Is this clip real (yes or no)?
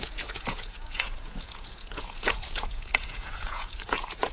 no